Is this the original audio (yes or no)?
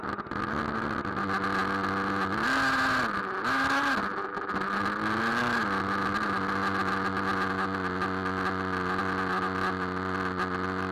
yes